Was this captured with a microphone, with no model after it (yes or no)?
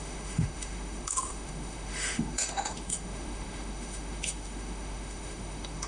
no